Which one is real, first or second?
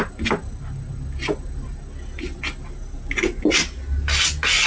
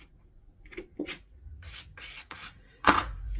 first